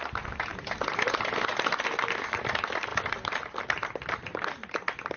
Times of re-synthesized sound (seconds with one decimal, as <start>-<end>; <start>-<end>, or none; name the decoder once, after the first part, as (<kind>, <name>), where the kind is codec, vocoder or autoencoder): none